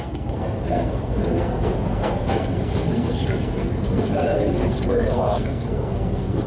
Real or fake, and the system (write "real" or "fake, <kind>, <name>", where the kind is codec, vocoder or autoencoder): fake, codec, SNAC